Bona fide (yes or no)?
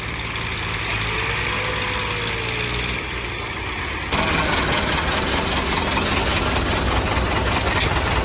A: yes